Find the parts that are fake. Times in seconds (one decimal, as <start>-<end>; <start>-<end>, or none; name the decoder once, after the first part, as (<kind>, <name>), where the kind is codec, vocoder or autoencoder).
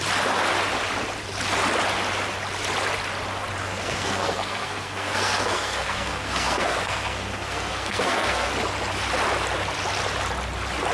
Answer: 3.6-8.5 (codec, SNAC)